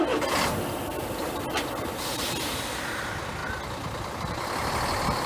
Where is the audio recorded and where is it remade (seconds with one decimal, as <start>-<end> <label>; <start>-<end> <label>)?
0.0-5.3 recorded